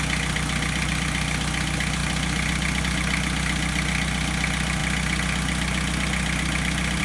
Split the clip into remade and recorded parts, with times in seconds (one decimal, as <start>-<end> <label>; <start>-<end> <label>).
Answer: 0.0-7.0 recorded